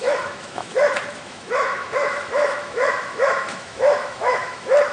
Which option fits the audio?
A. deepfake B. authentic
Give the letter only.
A